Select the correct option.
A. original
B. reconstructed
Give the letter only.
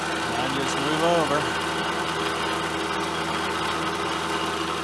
A